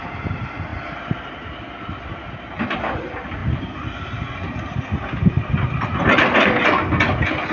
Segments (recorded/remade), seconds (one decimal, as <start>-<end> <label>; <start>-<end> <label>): 0.0-7.5 recorded